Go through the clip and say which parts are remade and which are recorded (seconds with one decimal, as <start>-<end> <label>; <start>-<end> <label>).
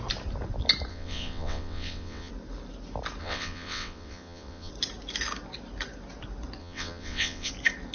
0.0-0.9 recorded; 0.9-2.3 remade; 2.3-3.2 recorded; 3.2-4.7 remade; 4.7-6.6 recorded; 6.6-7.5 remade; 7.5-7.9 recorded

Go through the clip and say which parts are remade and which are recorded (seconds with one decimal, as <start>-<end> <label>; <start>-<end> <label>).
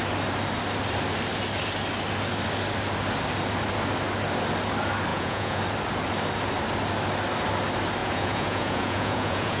0.0-5.1 recorded; 5.1-5.6 remade; 5.6-8.0 recorded; 8.0-9.6 remade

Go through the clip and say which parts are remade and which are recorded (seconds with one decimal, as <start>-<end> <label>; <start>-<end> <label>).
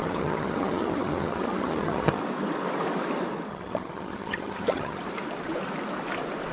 0.0-2.2 remade; 2.2-3.5 recorded; 3.5-5.0 remade; 5.0-6.5 recorded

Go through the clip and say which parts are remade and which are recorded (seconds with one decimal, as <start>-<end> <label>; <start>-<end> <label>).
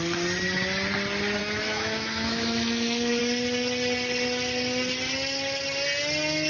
0.0-1.4 recorded; 1.4-3.2 remade; 3.2-6.5 recorded